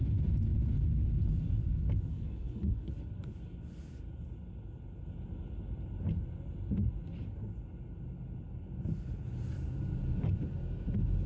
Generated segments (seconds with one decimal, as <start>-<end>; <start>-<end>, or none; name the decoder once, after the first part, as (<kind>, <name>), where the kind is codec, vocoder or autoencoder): 2.1-2.9 (codec, SNAC)